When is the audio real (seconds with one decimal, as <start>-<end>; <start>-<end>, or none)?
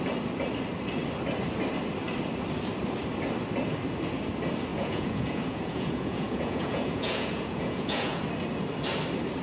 0.0-4.7; 8.2-9.4